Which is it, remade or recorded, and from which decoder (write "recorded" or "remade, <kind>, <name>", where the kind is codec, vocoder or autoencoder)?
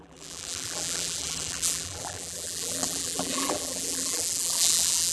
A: remade, vocoder, BigVGAN v2